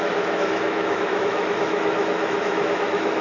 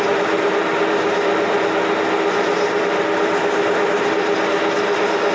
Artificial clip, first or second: first